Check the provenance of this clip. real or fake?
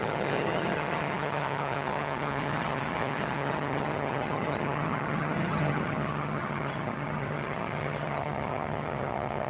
fake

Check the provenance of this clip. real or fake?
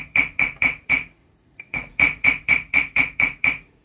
fake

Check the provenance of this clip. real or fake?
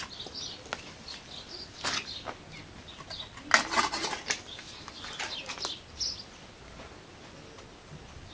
real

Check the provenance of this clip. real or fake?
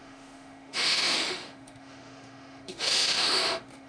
fake